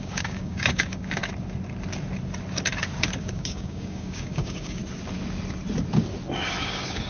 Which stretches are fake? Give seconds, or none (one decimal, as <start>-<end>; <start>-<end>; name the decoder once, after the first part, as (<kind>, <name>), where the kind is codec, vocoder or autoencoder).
0.0-1.2 (codec, DAC); 3.2-4.8; 6.6-7.1